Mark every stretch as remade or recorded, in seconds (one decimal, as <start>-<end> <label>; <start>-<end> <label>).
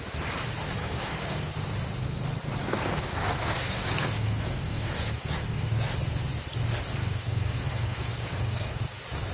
0.0-0.8 recorded; 0.8-1.5 remade; 1.5-2.6 recorded; 2.6-5.9 remade; 5.9-7.0 recorded; 7.0-8.8 remade; 8.8-9.3 recorded